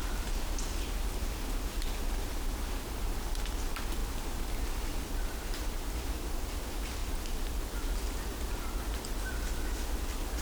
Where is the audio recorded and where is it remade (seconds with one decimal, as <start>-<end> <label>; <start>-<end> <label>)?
0.0-10.4 recorded

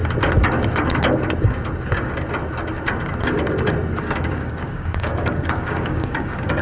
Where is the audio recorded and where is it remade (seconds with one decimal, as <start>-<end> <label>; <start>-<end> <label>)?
0.0-4.0 recorded; 4.0-6.6 remade

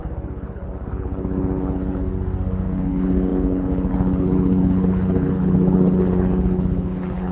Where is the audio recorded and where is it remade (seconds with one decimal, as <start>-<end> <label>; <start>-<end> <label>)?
0.0-2.1 remade; 2.1-2.9 recorded; 2.9-7.3 remade

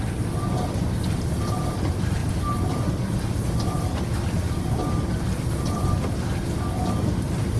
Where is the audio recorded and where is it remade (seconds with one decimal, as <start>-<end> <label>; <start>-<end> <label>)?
0.0-7.6 recorded

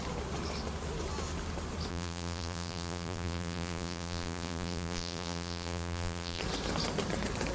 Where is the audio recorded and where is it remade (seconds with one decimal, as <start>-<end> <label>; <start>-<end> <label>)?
0.0-1.9 recorded; 1.9-6.4 remade; 6.4-7.5 recorded

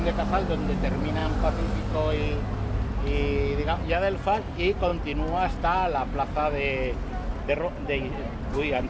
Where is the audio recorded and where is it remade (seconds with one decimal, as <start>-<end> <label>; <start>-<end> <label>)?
0.0-8.9 recorded

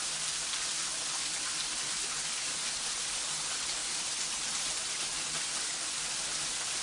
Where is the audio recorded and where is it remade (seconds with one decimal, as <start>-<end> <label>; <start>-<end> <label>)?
0.0-6.8 recorded

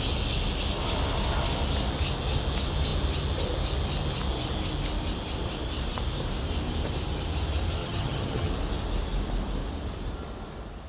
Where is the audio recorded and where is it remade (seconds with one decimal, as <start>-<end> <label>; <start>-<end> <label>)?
0.0-7.8 recorded; 7.8-8.5 remade; 8.5-10.9 recorded